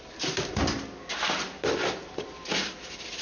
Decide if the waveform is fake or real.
fake